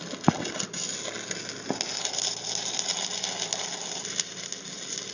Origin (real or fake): real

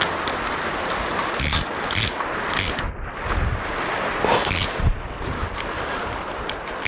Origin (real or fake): real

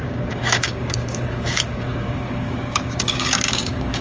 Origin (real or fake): fake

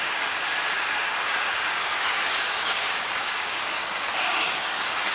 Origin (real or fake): fake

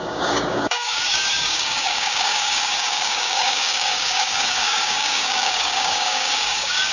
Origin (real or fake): fake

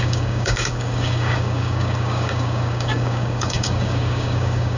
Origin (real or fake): fake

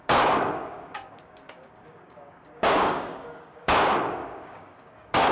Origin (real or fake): fake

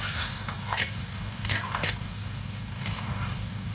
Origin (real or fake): fake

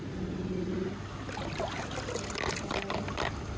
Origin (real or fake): real